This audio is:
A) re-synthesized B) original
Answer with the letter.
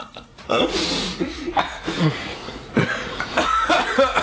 A